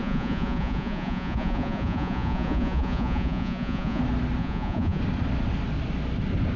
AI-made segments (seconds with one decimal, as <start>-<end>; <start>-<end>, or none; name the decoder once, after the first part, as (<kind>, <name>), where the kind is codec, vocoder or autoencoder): 0.0-4.0 (vocoder, Vocos); 4.4-5.0